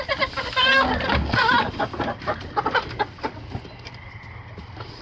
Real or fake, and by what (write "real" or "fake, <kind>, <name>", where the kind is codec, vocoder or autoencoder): real